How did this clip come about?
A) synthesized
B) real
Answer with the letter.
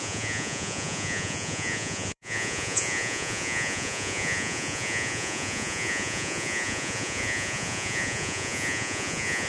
A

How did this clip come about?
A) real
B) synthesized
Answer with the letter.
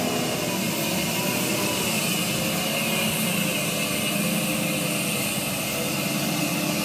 A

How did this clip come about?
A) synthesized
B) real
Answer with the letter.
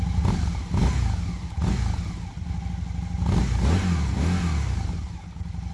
B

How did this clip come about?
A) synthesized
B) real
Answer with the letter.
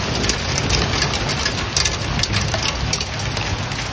B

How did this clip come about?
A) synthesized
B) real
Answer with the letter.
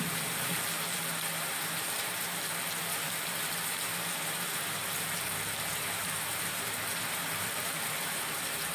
A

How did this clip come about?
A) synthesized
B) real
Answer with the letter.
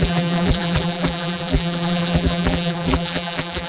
A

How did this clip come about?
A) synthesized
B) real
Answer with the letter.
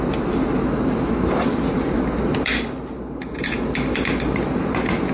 B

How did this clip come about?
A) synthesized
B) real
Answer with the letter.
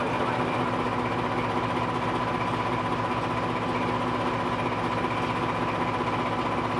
B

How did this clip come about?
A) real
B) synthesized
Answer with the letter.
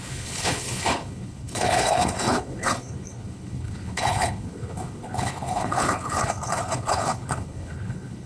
B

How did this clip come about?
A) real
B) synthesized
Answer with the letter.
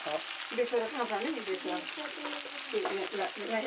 A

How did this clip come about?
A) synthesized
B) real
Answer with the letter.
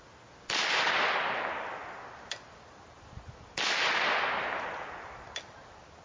B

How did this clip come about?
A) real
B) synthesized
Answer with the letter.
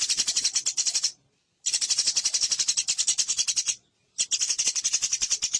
B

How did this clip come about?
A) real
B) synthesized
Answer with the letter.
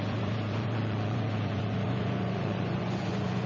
B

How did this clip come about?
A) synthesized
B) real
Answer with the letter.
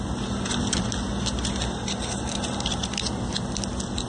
B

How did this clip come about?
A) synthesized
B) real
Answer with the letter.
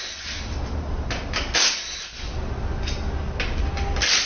B